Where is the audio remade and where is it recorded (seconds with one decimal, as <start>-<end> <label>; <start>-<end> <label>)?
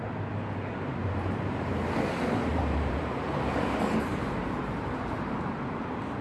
0.0-1.0 recorded; 1.0-1.7 remade; 1.7-2.5 recorded; 2.5-5.5 remade; 5.5-6.2 recorded